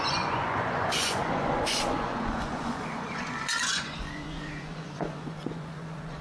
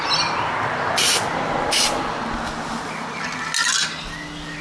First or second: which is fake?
first